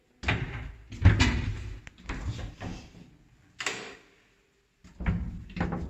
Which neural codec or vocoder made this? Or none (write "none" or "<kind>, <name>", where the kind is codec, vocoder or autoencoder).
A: none